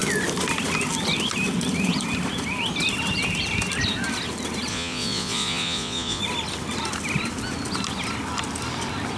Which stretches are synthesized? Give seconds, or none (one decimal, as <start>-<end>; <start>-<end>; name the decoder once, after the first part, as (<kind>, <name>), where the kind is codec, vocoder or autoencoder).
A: 4.7-6.2 (vocoder, Vocos)